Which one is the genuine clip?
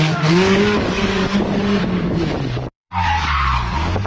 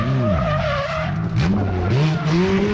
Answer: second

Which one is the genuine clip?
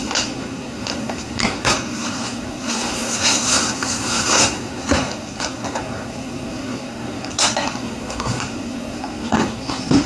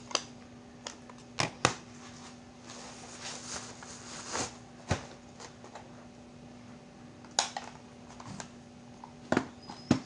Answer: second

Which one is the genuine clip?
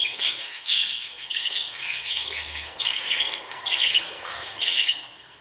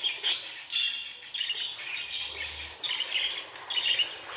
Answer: second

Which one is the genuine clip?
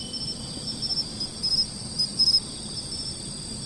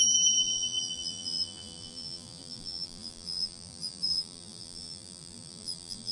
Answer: first